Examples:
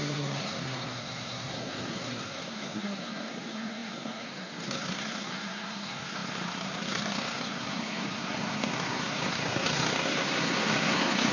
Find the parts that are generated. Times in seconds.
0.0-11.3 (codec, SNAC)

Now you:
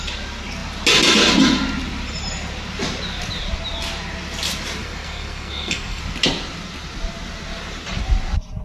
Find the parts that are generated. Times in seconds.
4.8-6.0 (codec, SNAC)

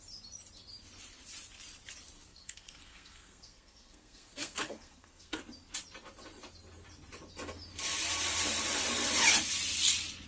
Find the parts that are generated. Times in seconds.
2.3-5.4 (codec, SNAC)

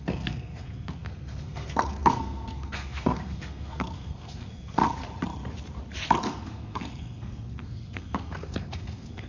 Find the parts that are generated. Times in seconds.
0.0-4.8 (codec, SNAC); 6.2-9.3

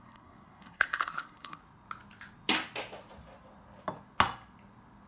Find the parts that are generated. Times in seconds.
0.0-1.6 (codec, SNAC)

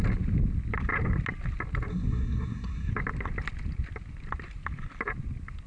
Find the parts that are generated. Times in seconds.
1.9-2.9 (codec, SNAC)

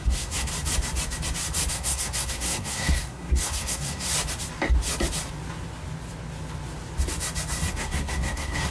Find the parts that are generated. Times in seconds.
0.0-0.5 (codec, SNAC); 1.7-4.1; 7.7-8.7

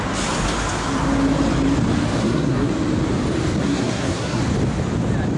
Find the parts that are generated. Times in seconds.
2.2-2.7 (codec, SNAC); 3.6-4.4